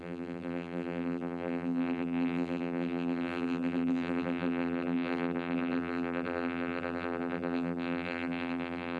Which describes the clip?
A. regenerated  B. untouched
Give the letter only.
A